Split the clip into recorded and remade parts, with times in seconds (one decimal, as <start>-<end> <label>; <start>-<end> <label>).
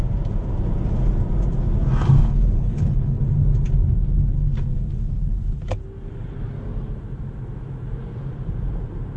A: 0.0-2.2 recorded; 2.2-3.2 remade; 3.2-9.2 recorded